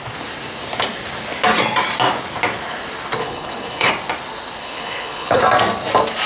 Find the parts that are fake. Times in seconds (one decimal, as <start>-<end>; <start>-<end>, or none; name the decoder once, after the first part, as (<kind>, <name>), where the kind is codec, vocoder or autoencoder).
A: 3.2-3.9 (codec, HILCodec); 4.6-5.4